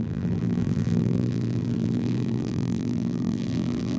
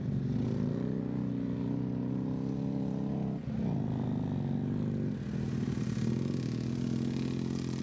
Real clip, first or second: second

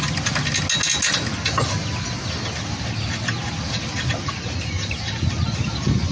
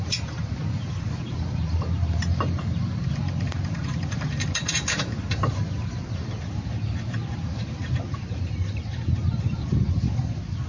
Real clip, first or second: first